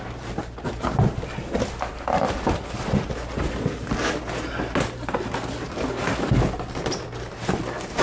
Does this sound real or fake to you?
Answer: real